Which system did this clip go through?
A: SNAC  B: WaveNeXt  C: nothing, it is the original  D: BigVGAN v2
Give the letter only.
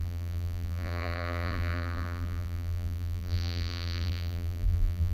D